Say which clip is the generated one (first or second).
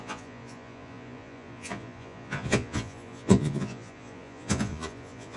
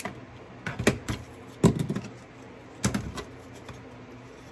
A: first